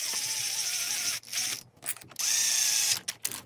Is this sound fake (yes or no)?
no